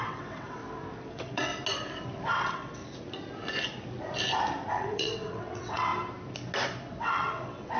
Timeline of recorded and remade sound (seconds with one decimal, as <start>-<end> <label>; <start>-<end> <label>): 0.0-0.6 remade; 0.6-1.1 recorded; 1.1-1.5 remade; 1.5-2.3 recorded; 2.3-2.8 remade; 2.8-4.7 recorded; 4.7-5.9 remade; 5.9-7.0 recorded; 7.0-7.8 remade